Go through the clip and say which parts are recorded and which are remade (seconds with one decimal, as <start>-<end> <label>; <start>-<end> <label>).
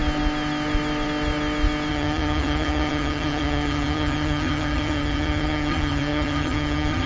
0.0-1.9 recorded; 1.9-7.1 remade